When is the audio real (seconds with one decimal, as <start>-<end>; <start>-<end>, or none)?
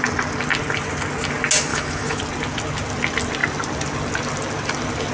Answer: 0.0-1.7; 2.2-5.1